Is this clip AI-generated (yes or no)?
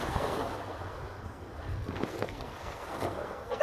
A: yes